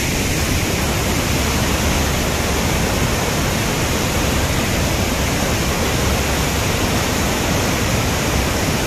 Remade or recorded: recorded